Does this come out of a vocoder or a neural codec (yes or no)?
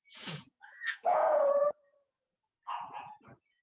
yes